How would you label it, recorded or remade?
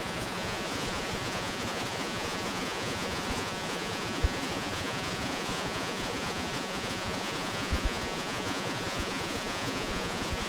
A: remade